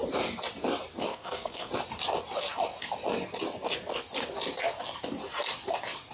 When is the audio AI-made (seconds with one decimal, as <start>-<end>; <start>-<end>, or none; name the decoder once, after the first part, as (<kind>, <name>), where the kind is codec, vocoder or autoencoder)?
1.1-1.7 (codec, SNAC)